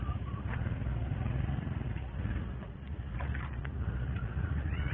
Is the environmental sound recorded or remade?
remade